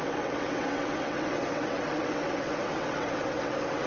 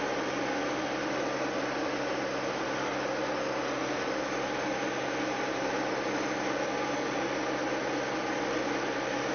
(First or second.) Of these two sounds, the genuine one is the second